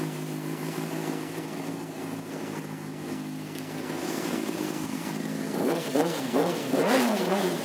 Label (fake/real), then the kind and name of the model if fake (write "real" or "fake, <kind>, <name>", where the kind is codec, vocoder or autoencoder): fake, codec, SNAC